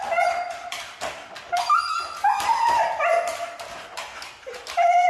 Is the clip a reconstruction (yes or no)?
no